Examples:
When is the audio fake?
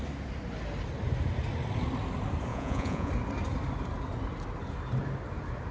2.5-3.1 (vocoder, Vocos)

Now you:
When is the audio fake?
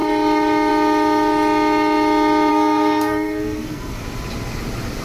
2.5-4.0 (codec, SNAC)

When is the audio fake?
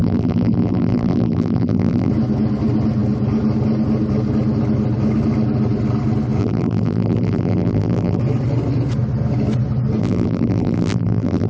0.0-2.1 (vocoder, BigVGAN v2); 6.4-8.2; 10.0-11.5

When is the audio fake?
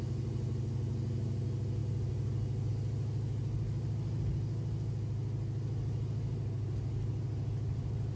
none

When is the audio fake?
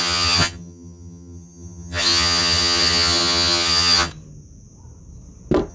0.0-4.1 (vocoder, HiFi-GAN)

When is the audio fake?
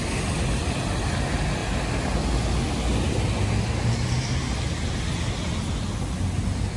none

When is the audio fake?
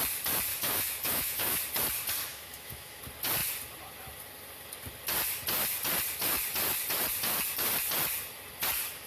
0.5-1.6 (autoencoder, DAC-VAE); 2.3-3.0